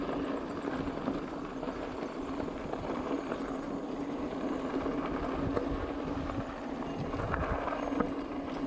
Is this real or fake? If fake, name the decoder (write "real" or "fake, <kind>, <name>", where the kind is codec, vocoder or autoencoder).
real